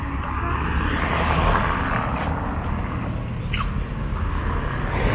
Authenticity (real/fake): real